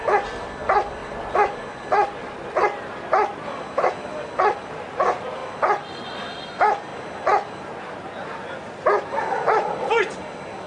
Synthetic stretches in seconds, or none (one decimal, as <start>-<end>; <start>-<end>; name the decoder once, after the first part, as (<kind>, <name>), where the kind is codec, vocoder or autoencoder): none